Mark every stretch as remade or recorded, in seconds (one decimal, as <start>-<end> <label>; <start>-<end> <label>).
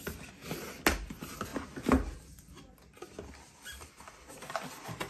0.0-5.1 recorded